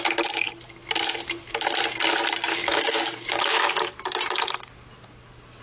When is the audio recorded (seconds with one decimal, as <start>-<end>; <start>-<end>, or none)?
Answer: 0.0-2.5; 3.6-5.6